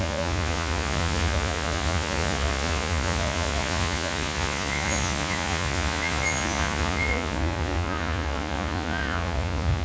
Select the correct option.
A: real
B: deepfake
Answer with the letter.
B